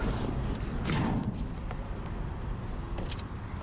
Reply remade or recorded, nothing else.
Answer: remade